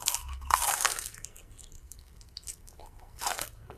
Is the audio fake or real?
fake